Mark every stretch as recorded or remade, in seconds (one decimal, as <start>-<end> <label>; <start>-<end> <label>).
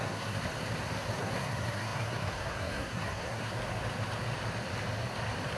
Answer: 0.0-0.4 remade; 0.4-1.2 recorded; 1.2-3.5 remade; 3.5-5.6 recorded